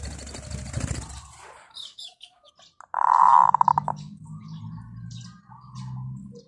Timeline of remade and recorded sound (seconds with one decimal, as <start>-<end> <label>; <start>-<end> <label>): 0.0-1.6 recorded; 1.6-2.5 remade; 2.5-3.7 recorded; 3.7-4.6 remade; 4.6-6.5 recorded